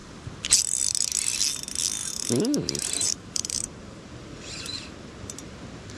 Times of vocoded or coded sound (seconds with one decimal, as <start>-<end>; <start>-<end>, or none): 2.0-4.0